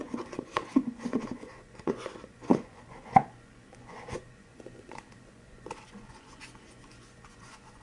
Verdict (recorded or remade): remade